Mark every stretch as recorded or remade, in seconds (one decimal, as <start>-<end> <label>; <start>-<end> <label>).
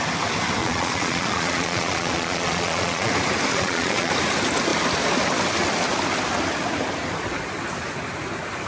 0.0-0.6 recorded; 0.6-3.1 remade; 3.1-3.5 recorded; 3.5-4.1 remade; 4.1-8.7 recorded